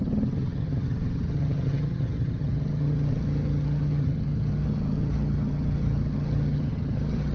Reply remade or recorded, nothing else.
remade